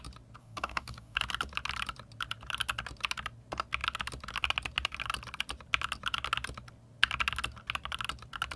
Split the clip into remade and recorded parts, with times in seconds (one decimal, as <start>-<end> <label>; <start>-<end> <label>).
0.0-0.4 recorded; 0.4-1.2 remade; 1.2-8.6 recorded